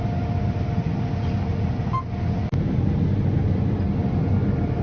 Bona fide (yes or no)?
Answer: yes